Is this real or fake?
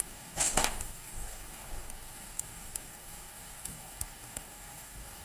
fake